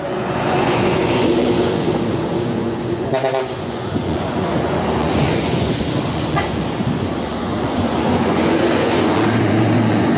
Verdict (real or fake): fake